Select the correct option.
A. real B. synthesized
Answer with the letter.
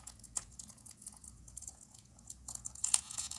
B